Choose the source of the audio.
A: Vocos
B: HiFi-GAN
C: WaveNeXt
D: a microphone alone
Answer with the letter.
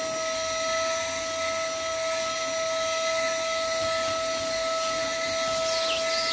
D